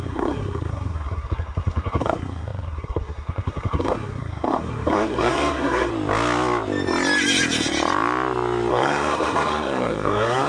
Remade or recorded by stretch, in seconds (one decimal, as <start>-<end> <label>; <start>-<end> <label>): 0.0-5.9 remade; 5.9-8.7 recorded; 8.7-10.5 remade